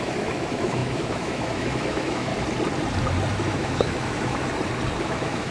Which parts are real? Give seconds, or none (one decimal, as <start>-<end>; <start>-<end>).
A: 2.3-3.3; 4.4-5.0